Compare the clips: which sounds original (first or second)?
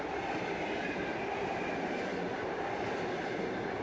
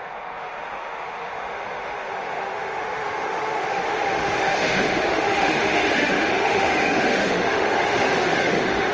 first